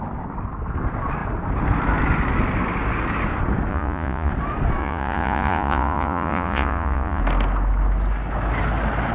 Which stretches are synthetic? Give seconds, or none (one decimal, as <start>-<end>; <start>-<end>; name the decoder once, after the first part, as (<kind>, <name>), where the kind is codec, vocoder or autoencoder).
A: 3.7-4.3 (vocoder, Vocos); 4.8-7.2